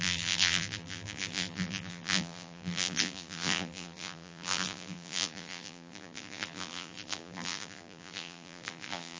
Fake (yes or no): yes